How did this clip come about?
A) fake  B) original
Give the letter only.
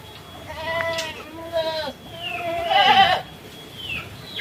B